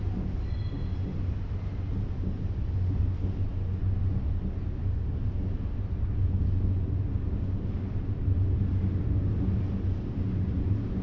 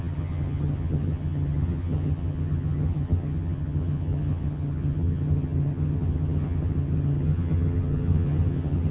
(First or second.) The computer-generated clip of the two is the second